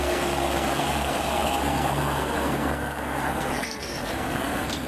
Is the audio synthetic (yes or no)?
yes